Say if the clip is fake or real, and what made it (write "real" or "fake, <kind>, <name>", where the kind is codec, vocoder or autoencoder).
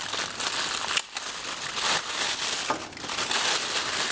real